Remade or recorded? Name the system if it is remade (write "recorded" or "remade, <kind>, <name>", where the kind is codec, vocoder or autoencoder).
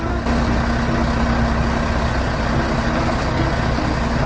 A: recorded